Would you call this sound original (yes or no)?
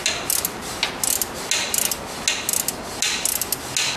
yes